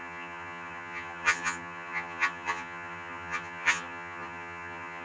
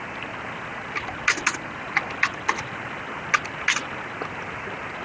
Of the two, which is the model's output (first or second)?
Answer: first